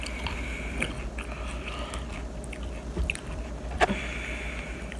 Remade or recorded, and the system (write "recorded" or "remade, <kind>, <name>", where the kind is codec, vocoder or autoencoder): recorded